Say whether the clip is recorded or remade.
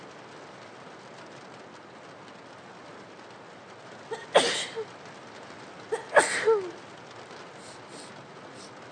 recorded